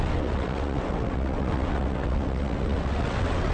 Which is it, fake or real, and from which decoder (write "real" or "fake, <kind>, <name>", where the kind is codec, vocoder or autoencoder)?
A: fake, vocoder, WaveNeXt